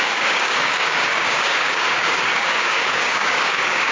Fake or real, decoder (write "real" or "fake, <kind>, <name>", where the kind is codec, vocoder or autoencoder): fake, codec, DAC